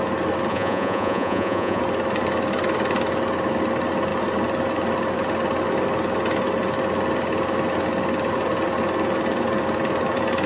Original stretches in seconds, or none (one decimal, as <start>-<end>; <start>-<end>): 0.0-0.5; 1.8-10.5